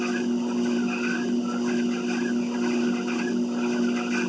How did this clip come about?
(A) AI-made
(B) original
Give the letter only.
B